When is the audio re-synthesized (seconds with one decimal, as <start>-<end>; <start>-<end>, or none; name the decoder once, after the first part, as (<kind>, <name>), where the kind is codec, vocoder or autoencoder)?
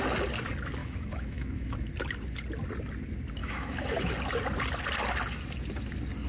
0.8-1.9 (autoencoder, DAC-VAE); 3.4-4.1